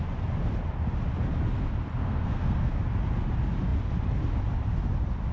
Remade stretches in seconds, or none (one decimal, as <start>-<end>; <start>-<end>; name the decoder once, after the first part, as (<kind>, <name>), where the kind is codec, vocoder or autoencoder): 2.0-2.7 (codec, SNAC)